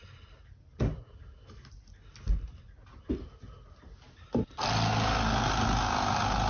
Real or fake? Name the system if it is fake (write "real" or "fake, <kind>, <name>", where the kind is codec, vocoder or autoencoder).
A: real